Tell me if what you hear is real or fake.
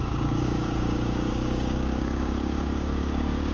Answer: fake